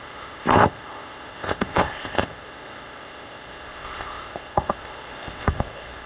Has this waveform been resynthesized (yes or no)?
yes